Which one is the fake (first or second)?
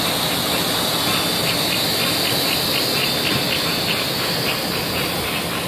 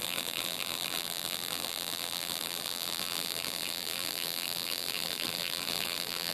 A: second